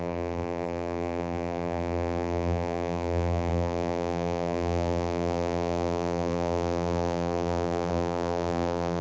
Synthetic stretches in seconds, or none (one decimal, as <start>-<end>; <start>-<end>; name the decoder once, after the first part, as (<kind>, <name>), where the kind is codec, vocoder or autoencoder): 0.0-9.0 (vocoder, BigVGAN v2)